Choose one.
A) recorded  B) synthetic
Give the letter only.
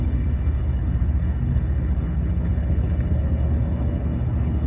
B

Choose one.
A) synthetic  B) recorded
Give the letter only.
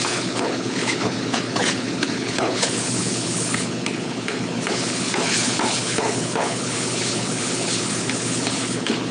A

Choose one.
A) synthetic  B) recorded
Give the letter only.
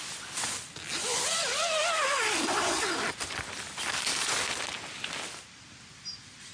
B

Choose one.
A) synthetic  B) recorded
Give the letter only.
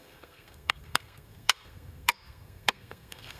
A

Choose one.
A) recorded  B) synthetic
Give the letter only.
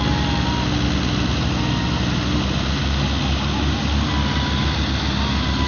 A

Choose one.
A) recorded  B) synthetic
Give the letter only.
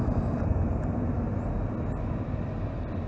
A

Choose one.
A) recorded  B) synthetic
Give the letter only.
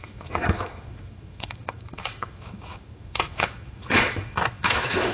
B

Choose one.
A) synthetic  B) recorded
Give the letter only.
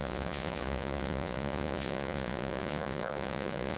A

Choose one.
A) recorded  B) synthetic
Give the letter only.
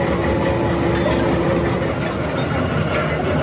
A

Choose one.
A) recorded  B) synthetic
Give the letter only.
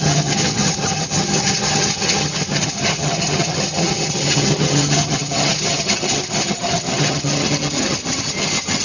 B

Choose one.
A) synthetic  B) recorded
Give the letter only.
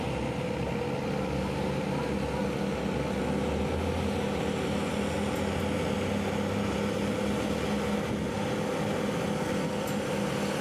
B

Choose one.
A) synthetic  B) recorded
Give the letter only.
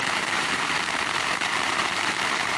A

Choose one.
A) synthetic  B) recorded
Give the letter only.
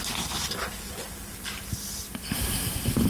B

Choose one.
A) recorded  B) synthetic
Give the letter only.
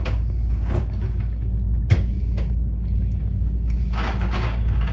B